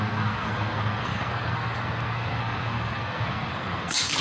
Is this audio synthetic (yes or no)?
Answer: yes